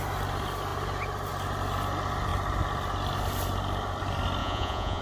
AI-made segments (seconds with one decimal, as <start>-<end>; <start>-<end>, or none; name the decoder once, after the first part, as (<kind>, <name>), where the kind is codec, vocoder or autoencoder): 4.4-5.0 (vocoder, Vocos)